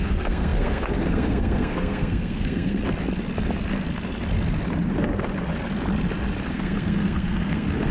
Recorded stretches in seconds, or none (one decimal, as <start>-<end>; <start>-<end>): 2.8-6.5

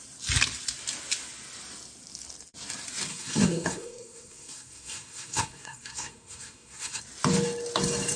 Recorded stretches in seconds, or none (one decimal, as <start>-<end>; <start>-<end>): 0.0-3.1; 7.0-8.2

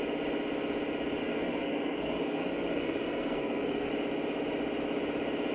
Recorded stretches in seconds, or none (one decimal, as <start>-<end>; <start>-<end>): 0.0-1.2; 3.9-5.5

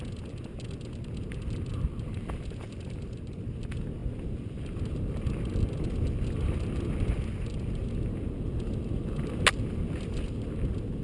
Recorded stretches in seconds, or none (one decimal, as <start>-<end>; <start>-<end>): 0.0-11.0